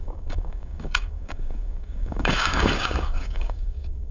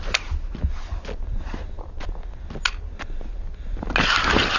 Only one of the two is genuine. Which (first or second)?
second